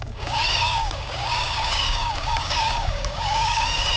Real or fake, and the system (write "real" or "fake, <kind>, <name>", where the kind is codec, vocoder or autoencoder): fake, codec, DAC